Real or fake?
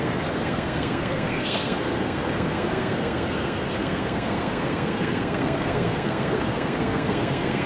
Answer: fake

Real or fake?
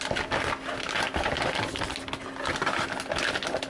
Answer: real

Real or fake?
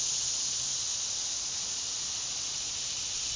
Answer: real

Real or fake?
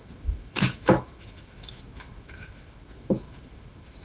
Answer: fake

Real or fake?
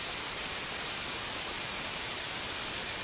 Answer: real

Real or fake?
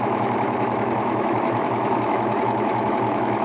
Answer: fake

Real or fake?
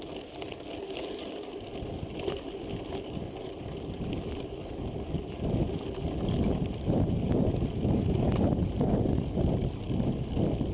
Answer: real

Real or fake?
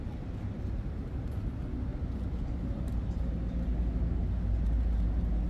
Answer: real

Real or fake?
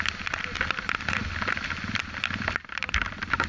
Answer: real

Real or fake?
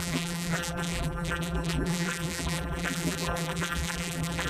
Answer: fake